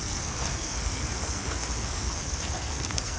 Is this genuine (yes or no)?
no